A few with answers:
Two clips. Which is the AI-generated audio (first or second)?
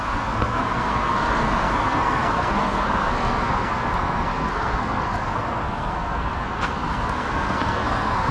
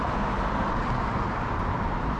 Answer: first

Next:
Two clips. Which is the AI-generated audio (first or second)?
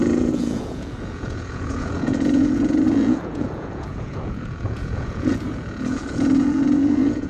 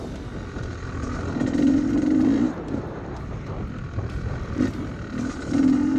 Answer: first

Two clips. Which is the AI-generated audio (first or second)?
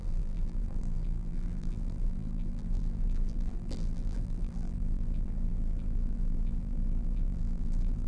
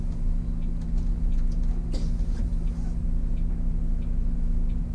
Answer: first